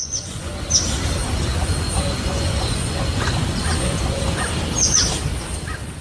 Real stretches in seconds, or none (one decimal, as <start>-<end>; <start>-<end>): 0.5-1.2; 4.5-6.0